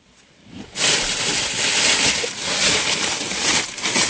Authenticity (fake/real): real